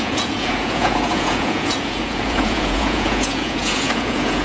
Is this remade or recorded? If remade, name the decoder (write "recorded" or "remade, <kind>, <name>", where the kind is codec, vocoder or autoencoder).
remade, vocoder, Vocos